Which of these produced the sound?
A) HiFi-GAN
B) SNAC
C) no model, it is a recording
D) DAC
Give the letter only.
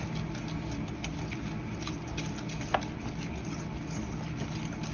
C